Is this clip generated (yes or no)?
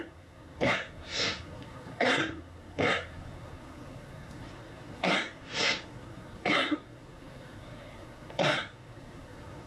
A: yes